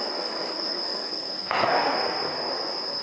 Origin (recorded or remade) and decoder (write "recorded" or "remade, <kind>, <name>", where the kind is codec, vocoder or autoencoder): remade, codec, SNAC